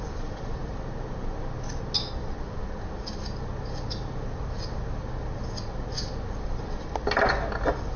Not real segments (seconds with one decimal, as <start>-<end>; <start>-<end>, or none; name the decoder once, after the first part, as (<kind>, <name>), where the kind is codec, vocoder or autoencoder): none